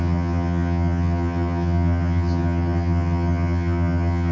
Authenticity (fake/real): fake